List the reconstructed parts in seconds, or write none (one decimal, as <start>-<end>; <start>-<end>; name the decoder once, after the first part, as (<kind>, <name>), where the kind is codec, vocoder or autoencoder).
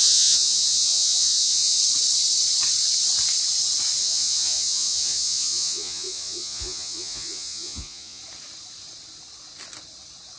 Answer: 0.0-1.8 (vocoder, Vocos); 4.0-8.2